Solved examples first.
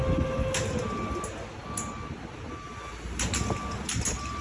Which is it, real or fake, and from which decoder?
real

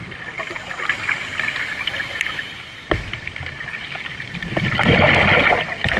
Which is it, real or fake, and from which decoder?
real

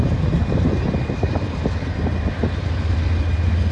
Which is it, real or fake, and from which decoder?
real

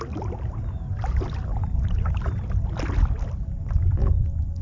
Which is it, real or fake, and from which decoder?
real